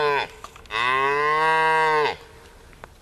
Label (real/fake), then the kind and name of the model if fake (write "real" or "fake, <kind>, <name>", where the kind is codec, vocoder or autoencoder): real